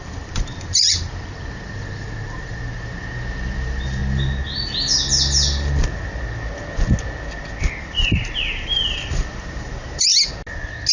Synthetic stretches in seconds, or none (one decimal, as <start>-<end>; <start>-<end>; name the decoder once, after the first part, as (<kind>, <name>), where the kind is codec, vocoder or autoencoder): 0.0-4.0 (vocoder, BigVGAN v2); 7.8-10.1